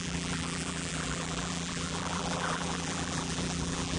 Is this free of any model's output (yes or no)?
no